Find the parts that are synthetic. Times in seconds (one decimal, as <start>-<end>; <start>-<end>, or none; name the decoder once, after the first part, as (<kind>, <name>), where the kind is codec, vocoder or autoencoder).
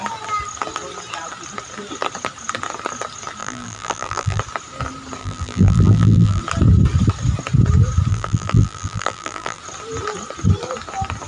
3.4-4.4 (vocoder, BigVGAN v2); 5.2-6.4; 8.1-9.6